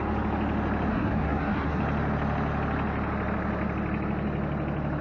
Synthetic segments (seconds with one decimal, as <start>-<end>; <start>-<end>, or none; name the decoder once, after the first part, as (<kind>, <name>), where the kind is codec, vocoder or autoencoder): 0.9-1.8 (codec, SNAC)